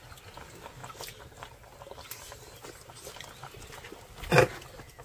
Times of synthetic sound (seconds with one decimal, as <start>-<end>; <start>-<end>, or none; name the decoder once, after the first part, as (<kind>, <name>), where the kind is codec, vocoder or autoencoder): none